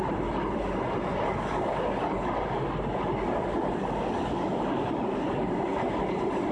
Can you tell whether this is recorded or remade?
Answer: recorded